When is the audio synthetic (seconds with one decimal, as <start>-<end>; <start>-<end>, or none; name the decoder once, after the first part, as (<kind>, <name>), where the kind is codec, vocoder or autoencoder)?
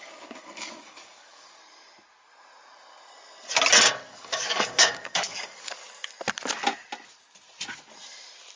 0.0-1.6 (codec, DAC); 4.1-5.8